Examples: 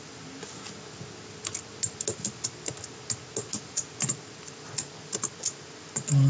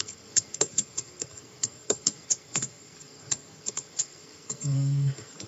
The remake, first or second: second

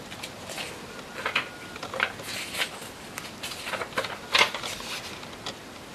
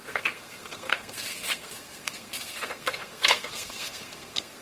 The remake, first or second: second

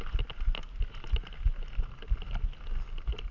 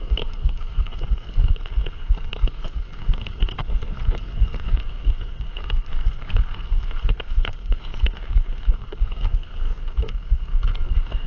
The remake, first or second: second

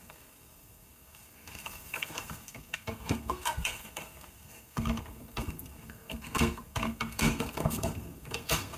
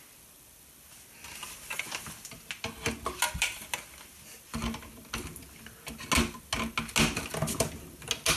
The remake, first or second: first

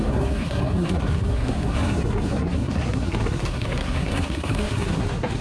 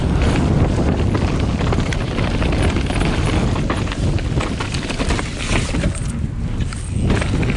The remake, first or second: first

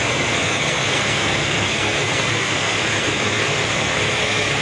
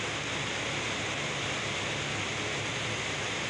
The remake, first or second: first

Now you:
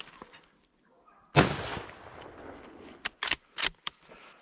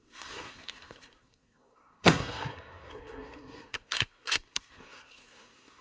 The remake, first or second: second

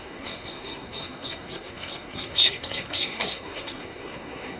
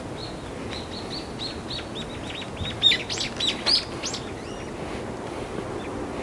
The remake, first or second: first